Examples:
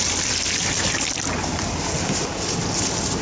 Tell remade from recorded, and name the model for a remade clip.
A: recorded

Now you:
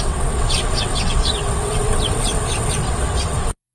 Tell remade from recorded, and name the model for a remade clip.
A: remade, vocoder, WaveNeXt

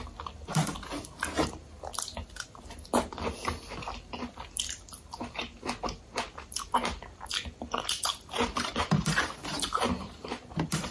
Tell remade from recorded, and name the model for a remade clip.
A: recorded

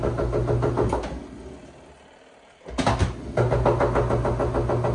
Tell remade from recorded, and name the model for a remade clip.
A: recorded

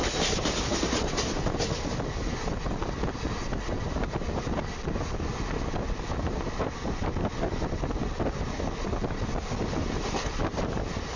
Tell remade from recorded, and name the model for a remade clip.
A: recorded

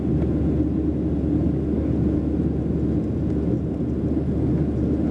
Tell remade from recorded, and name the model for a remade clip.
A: recorded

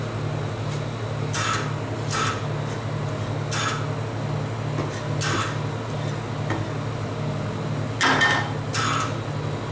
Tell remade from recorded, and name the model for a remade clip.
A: recorded